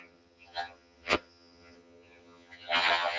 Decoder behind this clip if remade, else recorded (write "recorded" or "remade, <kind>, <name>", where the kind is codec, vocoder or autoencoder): remade, vocoder, HiFi-GAN